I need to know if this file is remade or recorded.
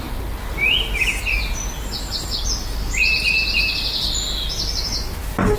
recorded